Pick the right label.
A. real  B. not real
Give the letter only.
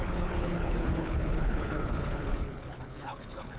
B